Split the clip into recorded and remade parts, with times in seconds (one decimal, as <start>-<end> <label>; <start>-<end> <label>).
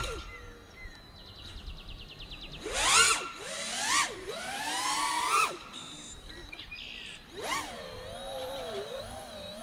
0.0-9.6 recorded